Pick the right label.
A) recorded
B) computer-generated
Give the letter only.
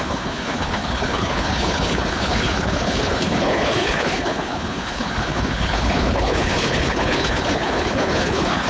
B